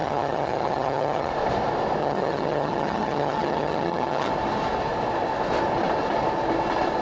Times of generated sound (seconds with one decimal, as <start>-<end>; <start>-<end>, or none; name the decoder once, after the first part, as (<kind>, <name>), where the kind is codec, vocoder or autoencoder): 0.0-1.3 (vocoder, HiFi-GAN); 2.0-4.3